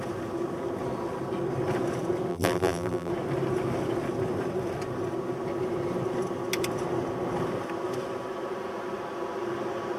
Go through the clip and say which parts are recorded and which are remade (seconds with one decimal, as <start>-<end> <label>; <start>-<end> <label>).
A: 0.0-2.3 recorded; 2.3-3.1 remade; 3.1-10.0 recorded